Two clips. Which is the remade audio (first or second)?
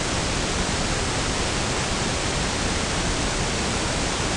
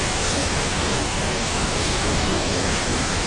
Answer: second